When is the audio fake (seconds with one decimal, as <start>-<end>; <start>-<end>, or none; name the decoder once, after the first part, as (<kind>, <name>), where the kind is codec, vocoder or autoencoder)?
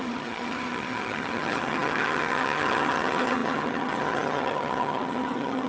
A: 0.0-5.7 (vocoder, HiFi-GAN)